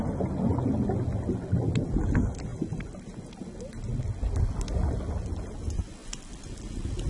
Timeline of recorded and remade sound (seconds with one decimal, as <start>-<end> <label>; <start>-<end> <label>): 0.0-7.1 recorded